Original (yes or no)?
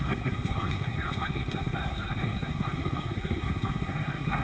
no